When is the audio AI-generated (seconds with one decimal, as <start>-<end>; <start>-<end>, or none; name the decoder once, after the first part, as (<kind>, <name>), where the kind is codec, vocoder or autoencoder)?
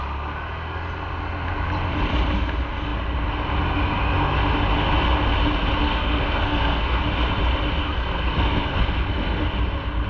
5.8-7.0 (codec, SNAC); 7.8-9.4